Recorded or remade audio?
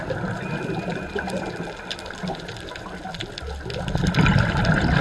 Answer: recorded